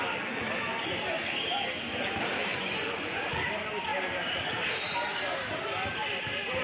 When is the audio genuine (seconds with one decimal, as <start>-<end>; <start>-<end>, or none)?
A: 0.0-2.5; 3.2-6.6

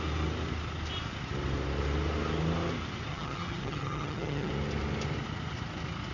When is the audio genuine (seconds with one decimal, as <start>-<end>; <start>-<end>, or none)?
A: 0.0-3.1; 4.5-6.1

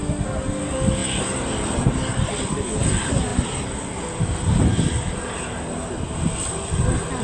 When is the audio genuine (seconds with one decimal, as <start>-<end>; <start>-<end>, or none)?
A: 0.0-7.2

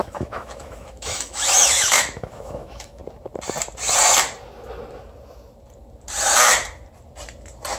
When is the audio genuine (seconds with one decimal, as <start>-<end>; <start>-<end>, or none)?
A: 3.0-7.8

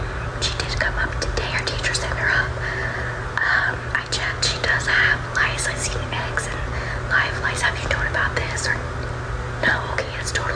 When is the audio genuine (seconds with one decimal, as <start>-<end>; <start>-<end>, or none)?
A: 0.0-10.6

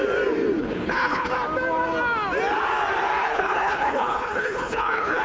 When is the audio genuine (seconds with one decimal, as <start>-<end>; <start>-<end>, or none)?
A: 0.0-0.6; 1.3-3.2